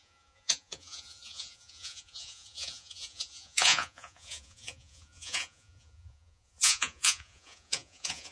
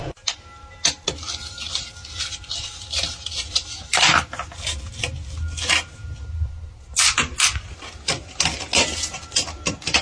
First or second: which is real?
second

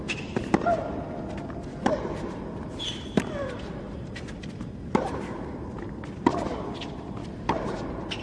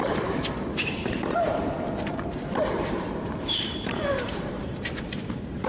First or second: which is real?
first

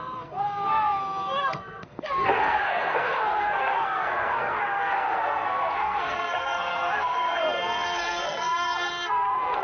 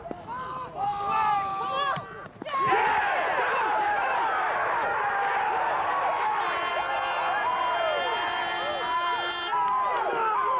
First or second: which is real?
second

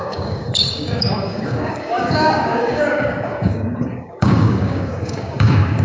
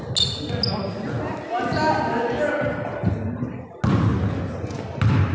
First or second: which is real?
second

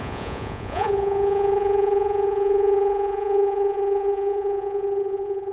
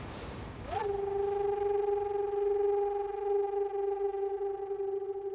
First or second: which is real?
second